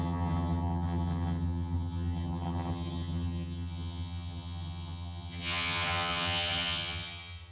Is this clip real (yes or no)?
no